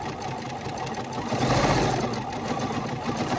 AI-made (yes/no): no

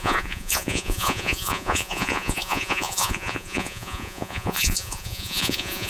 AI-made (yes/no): yes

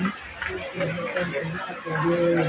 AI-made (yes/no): no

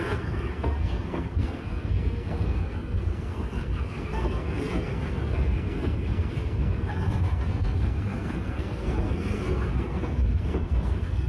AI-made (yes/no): yes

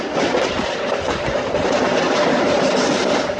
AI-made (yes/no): no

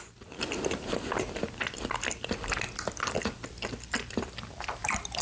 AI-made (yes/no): yes